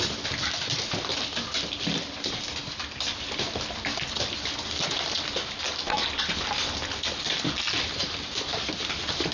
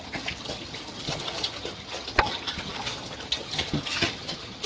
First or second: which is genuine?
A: first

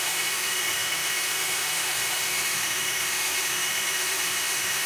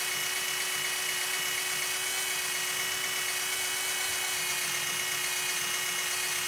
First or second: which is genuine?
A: second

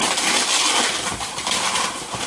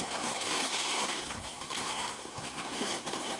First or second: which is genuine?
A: first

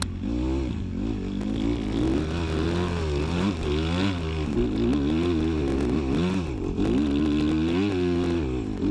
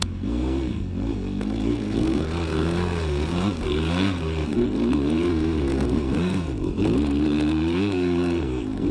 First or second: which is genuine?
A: first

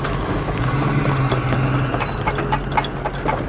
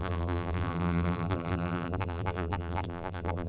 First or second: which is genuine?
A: first